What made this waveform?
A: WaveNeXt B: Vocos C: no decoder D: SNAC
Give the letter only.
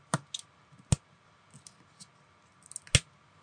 C